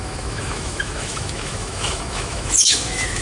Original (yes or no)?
no